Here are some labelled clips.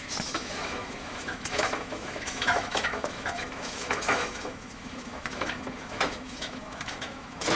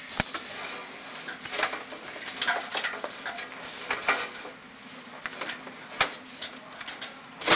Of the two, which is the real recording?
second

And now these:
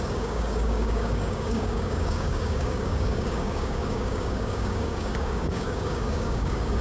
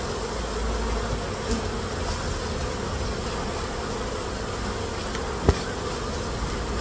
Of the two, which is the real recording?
second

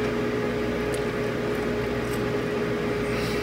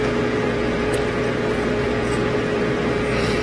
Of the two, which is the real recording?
first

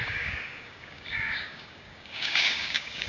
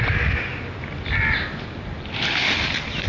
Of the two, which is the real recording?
second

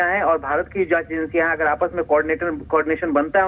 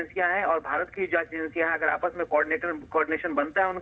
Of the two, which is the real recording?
first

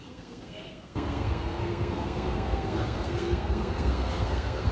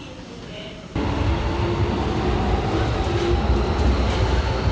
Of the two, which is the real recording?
second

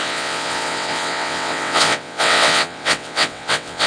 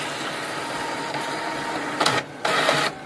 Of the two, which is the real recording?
second